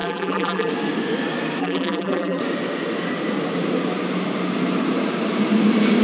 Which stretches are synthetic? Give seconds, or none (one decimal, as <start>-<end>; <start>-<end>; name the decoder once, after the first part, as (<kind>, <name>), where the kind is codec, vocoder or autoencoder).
0.0-0.7 (vocoder, BigVGAN v2); 1.6-2.4